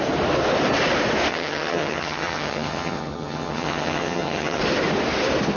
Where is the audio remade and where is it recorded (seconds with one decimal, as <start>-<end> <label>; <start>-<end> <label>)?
0.0-1.3 recorded; 1.3-4.6 remade; 4.6-5.6 recorded